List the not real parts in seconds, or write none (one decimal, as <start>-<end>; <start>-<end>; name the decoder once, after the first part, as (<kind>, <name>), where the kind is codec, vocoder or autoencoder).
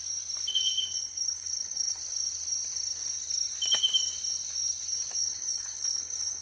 0.5-2.0 (codec, HILCodec); 5.2-6.4